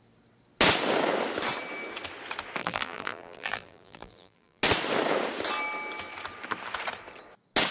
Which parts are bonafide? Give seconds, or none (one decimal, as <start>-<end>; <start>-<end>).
0.0-2.6; 4.6-7.7